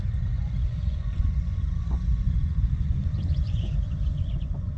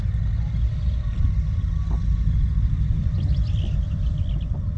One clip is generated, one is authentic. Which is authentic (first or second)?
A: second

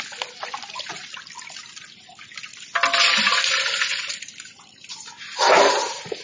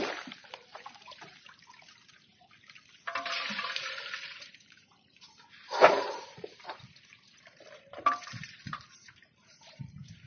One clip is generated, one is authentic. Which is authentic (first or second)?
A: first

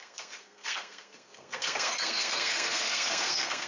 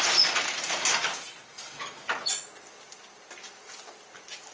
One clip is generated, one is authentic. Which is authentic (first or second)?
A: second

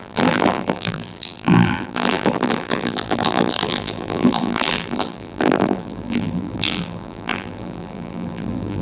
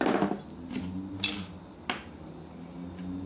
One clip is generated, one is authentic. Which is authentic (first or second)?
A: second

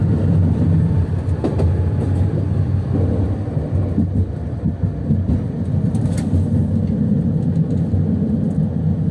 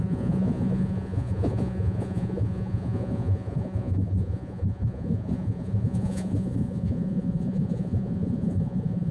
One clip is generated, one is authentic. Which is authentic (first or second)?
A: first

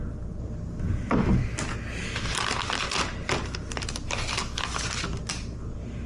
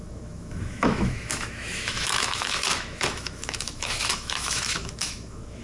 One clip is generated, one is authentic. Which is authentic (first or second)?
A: first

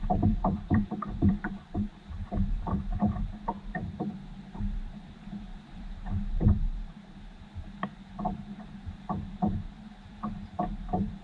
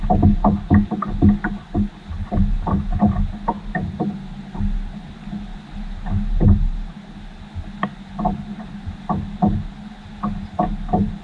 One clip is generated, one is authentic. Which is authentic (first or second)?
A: second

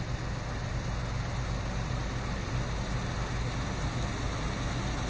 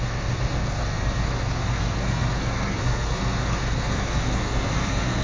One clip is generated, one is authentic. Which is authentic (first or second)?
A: first